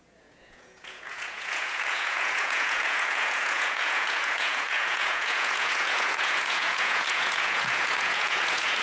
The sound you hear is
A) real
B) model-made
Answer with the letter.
B